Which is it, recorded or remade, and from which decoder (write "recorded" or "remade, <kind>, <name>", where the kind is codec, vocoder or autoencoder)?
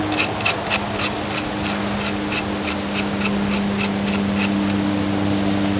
recorded